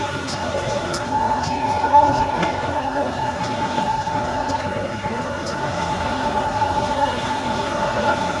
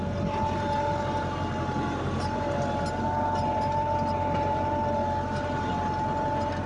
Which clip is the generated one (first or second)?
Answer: first